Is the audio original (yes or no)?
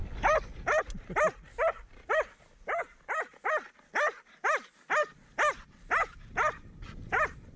yes